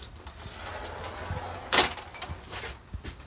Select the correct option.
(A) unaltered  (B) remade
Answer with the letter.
A